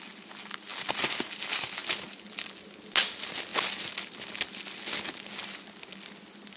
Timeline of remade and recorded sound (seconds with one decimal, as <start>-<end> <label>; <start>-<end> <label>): 0.0-6.6 recorded